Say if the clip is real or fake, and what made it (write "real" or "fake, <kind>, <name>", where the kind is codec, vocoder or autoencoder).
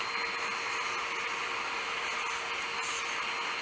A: real